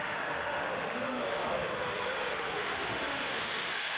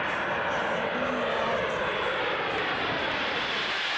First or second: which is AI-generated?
first